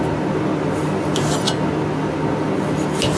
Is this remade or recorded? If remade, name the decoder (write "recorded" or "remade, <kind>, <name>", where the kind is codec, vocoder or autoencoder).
recorded